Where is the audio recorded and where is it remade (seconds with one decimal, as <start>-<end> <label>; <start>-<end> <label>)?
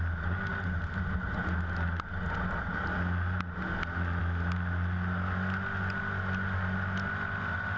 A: 0.0-7.8 recorded